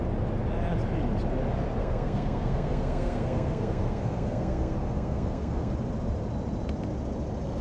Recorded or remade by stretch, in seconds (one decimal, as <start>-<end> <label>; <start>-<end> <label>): 0.0-1.8 recorded; 1.8-5.7 remade; 5.7-7.6 recorded